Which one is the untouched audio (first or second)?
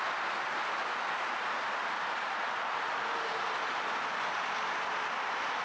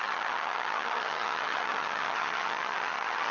first